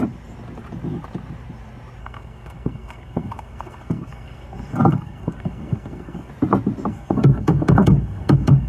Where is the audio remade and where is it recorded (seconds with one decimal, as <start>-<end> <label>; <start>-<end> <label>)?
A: 0.0-2.0 recorded; 2.0-6.3 remade; 6.3-6.9 recorded; 6.9-8.7 remade